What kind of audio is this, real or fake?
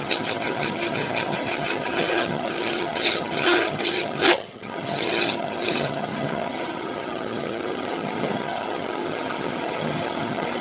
fake